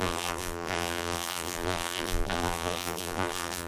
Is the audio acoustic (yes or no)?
no